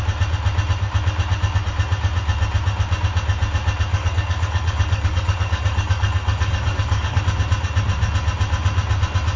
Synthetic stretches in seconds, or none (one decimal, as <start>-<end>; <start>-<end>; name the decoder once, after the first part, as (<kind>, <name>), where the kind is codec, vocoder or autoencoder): 3.9-7.2 (codec, DAC)